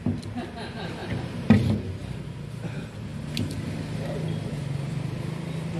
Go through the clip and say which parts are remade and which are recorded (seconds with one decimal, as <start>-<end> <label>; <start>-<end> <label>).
0.0-5.8 recorded